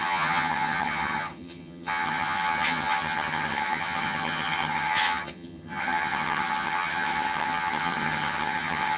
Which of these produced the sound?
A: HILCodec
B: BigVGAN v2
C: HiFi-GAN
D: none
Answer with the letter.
C